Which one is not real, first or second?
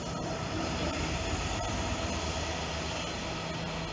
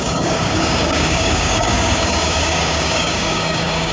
second